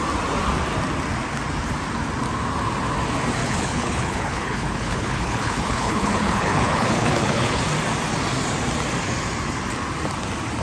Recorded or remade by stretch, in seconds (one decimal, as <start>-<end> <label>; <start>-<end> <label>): 0.0-3.4 recorded; 3.4-7.6 remade; 7.6-10.6 recorded